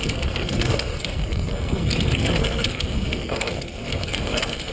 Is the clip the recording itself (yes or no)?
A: no